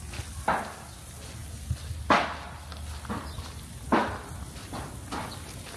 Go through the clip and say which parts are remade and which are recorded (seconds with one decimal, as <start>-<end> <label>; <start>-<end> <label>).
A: 0.0-5.8 recorded